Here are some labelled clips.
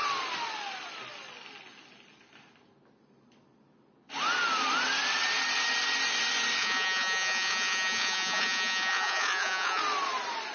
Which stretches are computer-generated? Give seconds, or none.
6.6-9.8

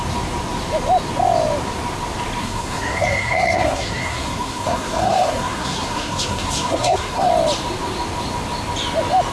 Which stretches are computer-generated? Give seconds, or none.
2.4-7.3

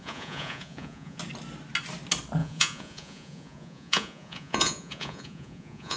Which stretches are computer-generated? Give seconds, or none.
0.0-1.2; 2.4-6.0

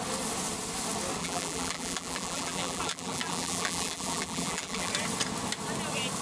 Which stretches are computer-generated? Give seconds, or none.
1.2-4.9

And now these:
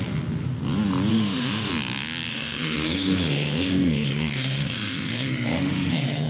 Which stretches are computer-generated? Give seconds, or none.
1.1-1.7; 2.3-6.3